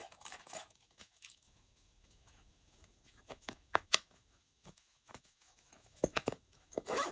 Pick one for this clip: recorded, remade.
remade